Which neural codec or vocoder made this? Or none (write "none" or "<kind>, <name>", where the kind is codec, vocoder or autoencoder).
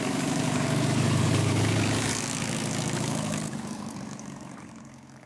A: codec, DAC